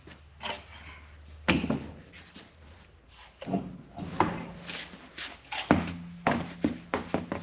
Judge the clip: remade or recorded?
recorded